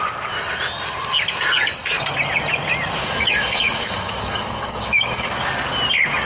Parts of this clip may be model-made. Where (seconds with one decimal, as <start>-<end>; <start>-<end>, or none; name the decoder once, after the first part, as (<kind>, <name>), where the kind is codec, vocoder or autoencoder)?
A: 3.0-5.3 (codec, DAC)